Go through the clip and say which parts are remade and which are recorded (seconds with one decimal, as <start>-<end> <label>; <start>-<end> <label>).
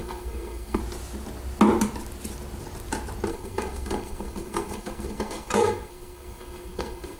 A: 0.0-0.8 remade; 0.8-3.3 recorded; 3.3-7.2 remade